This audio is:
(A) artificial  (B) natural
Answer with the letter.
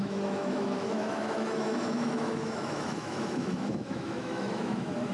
A